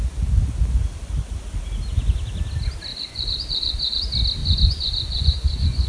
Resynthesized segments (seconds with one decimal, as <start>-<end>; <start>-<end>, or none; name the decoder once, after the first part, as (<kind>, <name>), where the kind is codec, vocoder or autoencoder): 2.9-4.0 (vocoder, Vocos); 4.4-5.9